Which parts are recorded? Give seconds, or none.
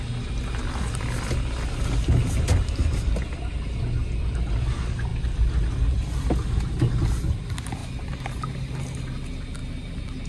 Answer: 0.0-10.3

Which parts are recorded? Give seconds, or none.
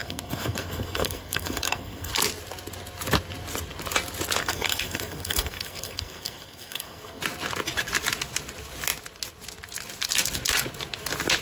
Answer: 2.1-4.4; 7.2-11.4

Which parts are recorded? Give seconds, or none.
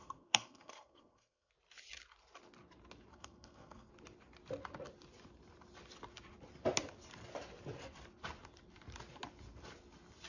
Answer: 1.5-3.1; 3.9-10.3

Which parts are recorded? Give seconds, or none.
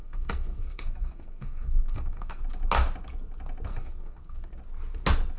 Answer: 2.4-3.7; 4.6-5.4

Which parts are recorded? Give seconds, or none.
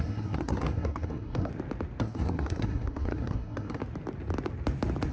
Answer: 1.5-2.0; 3.8-5.1